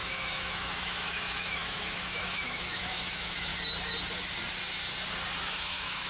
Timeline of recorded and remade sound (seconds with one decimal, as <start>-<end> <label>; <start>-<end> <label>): 0.0-3.5 remade; 3.5-5.4 recorded; 5.4-6.1 remade